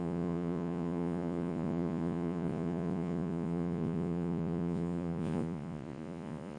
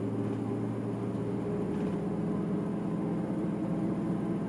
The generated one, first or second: first